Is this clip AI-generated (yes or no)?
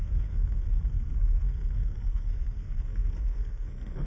yes